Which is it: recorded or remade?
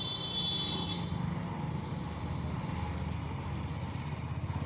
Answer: recorded